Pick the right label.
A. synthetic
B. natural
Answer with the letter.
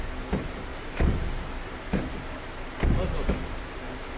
B